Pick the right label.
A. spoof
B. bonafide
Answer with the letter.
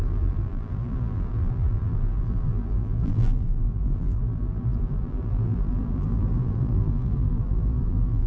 A